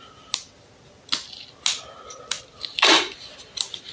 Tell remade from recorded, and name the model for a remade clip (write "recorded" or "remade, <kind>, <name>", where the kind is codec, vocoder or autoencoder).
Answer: recorded